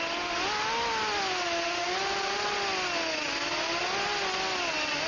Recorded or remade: recorded